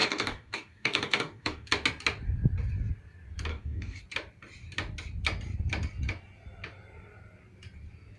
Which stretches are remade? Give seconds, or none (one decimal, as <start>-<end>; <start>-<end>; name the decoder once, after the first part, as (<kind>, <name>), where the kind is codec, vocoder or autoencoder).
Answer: 0.0-1.7 (codec, DAC); 3.5-4.0